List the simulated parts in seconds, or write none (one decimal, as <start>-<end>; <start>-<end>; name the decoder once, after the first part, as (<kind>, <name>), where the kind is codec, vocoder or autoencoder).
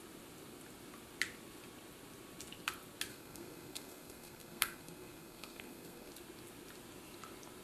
3.1-6.1 (codec, SNAC)